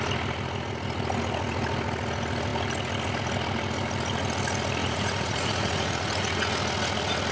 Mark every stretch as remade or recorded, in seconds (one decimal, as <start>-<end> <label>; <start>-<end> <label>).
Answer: 0.0-4.8 recorded; 4.8-6.5 remade; 6.5-7.3 recorded